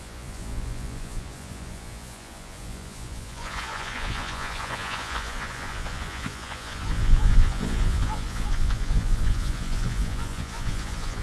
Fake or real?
fake